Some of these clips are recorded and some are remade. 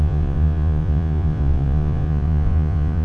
remade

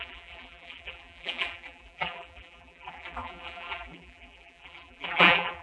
remade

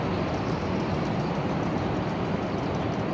recorded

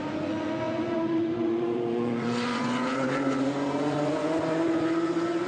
remade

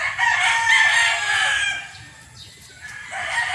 recorded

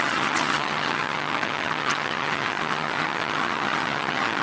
remade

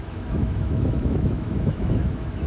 remade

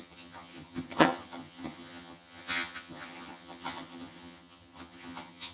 remade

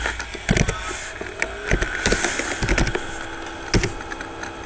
recorded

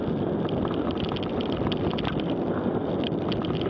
recorded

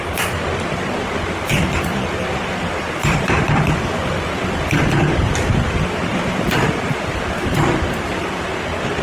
recorded